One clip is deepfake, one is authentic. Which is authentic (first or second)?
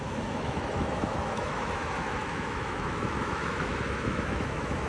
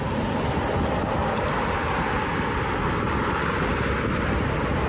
second